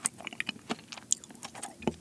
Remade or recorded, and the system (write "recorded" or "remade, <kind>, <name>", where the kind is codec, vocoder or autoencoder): recorded